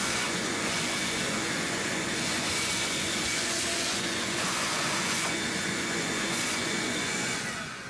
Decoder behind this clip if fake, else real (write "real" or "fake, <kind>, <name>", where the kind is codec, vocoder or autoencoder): fake, vocoder, Vocos